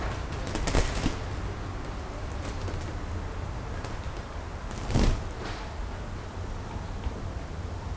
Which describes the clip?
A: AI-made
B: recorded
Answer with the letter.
B